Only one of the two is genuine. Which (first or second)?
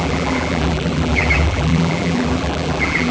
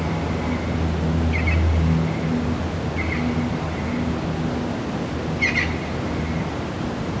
second